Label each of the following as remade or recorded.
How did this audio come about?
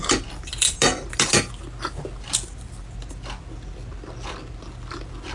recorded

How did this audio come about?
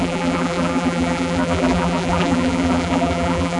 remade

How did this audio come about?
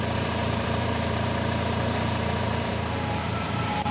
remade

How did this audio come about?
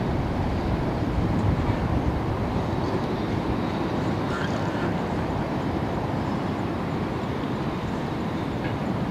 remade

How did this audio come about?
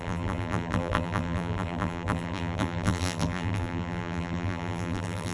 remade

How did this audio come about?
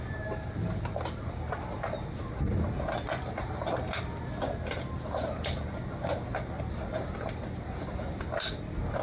recorded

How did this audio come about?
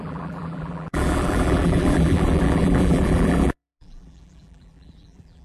remade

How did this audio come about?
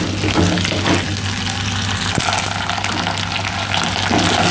recorded